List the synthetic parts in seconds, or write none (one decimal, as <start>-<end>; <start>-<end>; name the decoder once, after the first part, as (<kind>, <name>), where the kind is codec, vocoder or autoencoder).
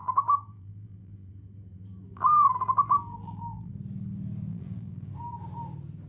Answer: 0.0-1.3 (vocoder, BigVGAN v2); 2.1-3.7; 4.5-5.1